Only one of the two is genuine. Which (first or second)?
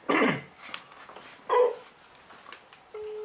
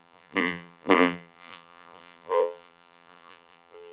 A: first